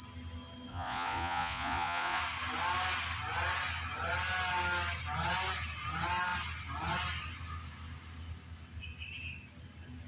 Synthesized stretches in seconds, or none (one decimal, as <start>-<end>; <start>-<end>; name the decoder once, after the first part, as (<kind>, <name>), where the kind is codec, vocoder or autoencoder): 0.7-2.2 (vocoder, Vocos)